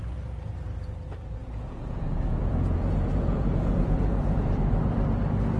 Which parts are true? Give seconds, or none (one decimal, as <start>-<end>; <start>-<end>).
0.0-1.4; 4.6-5.6